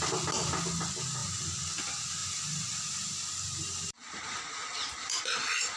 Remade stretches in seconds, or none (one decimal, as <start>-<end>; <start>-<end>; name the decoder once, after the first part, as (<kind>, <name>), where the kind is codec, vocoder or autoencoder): 2.2-5.2 (vocoder, BigVGAN v2)